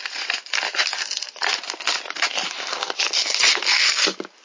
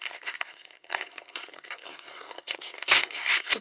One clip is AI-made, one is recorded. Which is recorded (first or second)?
first